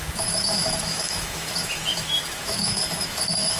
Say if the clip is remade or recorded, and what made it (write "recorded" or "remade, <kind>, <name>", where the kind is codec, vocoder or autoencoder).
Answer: remade, autoencoder, DAC-VAE